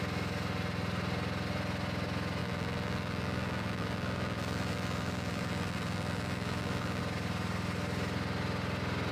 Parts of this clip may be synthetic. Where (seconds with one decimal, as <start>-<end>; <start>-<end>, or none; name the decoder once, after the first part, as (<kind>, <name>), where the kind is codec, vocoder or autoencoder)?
2.4-7.0 (vocoder, BigVGAN v2)